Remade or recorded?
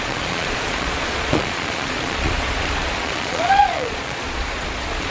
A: remade